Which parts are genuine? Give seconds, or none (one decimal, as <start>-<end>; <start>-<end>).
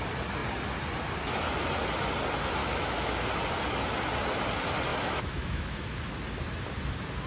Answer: 0.0-2.6; 3.1-4.9; 6.1-7.3